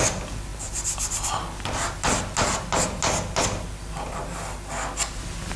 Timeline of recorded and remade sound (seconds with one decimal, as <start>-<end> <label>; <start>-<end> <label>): 0.0-5.6 recorded